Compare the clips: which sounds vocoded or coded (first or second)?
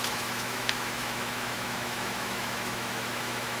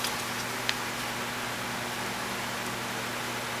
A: first